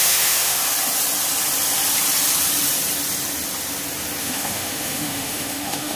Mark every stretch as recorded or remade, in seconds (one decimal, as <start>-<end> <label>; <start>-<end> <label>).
0.0-0.6 remade; 0.6-4.2 recorded; 4.2-6.0 remade